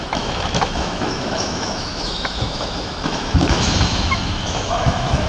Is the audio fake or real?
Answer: fake